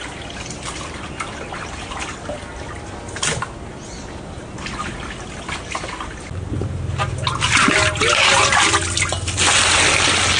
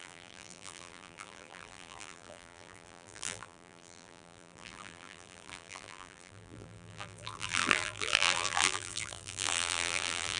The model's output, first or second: second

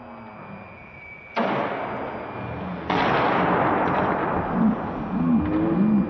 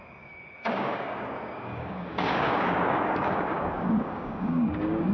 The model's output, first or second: second